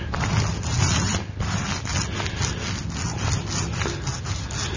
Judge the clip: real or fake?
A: real